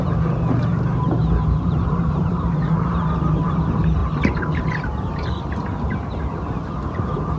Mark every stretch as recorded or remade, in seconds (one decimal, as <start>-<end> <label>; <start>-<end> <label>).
0.0-0.7 recorded; 0.7-3.6 remade; 3.6-4.0 recorded; 4.0-5.5 remade; 5.5-7.4 recorded